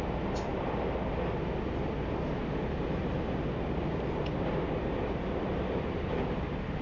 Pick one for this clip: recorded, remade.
recorded